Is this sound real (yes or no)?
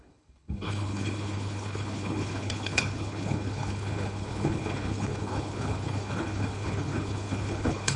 no